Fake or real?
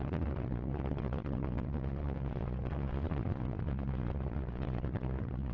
fake